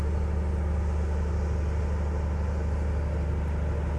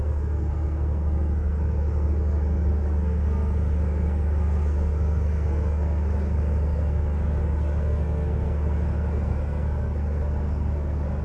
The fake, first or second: second